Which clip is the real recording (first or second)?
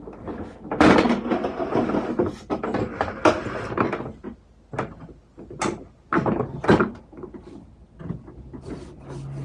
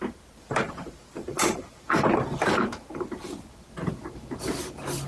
first